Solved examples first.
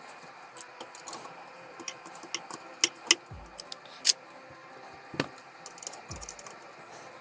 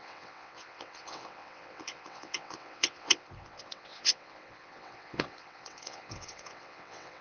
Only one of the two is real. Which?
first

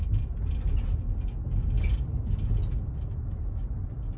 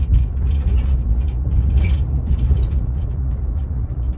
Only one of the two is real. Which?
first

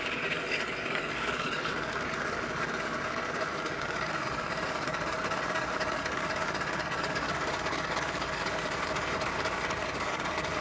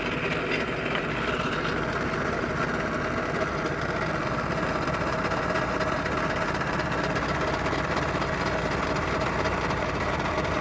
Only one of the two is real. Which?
second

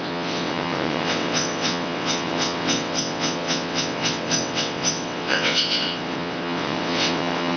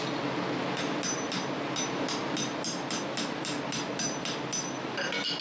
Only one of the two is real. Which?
second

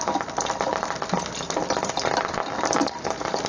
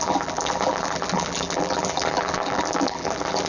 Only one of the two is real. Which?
first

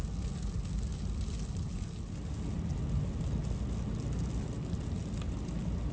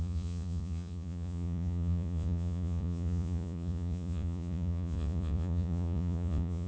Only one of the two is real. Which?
first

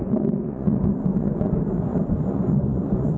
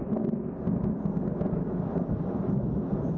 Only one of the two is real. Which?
second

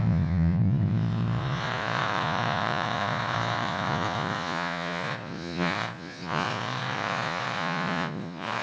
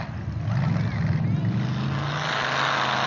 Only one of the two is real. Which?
second